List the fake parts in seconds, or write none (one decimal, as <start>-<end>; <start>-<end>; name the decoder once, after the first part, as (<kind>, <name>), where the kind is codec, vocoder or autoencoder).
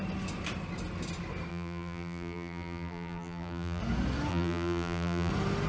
1.5-3.8 (vocoder, BigVGAN v2); 4.3-5.3